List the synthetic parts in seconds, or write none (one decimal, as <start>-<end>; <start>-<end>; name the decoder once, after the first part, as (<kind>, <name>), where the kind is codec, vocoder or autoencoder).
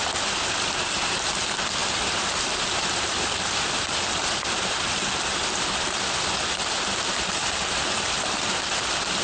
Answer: none